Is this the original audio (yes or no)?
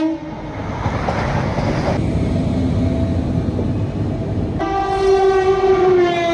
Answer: yes